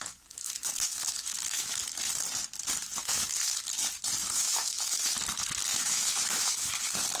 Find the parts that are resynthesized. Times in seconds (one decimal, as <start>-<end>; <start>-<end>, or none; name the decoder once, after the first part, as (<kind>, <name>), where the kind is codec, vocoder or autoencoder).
0.0-1.8 (autoencoder, DAC-VAE); 3.0-3.6; 4.2-5.1; 5.7-6.7